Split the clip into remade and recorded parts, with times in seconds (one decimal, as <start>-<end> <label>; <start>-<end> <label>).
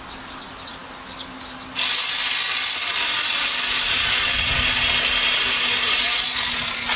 0.0-7.0 recorded